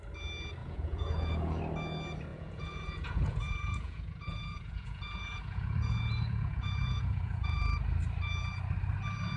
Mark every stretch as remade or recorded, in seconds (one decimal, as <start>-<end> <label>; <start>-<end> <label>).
0.0-0.6 recorded; 0.6-1.6 remade; 1.6-2.3 recorded; 2.3-7.6 remade; 7.6-9.4 recorded